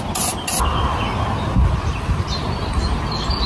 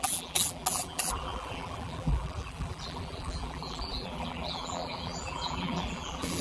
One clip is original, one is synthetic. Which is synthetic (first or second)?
second